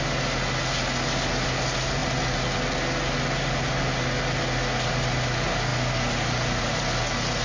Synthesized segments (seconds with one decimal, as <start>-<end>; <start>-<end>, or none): none